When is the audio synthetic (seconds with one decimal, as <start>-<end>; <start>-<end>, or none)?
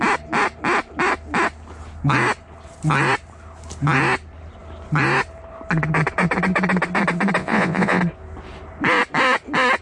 7.4-8.0